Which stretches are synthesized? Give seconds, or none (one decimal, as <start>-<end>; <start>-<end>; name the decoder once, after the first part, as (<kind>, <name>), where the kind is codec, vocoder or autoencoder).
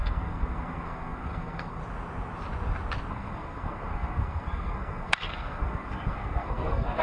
0.0-1.8 (codec, SNAC); 3.1-7.0